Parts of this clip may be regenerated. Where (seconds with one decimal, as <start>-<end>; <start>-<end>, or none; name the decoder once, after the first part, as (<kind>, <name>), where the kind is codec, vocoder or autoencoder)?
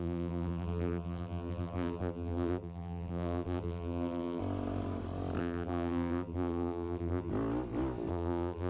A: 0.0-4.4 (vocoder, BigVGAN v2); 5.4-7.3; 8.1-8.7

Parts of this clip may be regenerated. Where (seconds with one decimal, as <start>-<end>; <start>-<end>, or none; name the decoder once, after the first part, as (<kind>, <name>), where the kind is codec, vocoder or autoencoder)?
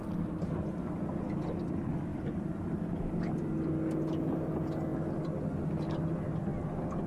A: 2.1-2.7 (vocoder, BigVGAN v2)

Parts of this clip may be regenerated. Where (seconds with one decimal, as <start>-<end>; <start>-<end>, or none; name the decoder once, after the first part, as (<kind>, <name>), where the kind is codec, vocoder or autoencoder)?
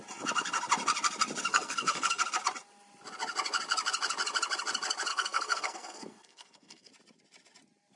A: 1.5-2.2 (codec, SNAC); 5.1-6.9